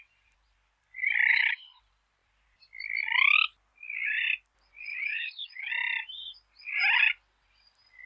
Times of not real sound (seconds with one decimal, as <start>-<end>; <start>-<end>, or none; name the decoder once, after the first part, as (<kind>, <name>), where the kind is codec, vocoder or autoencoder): 1.3-1.8 (codec, HILCodec); 4.9-5.7